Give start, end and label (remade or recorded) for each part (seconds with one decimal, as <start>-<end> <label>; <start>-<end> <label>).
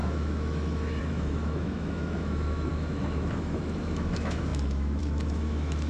0.0-5.9 remade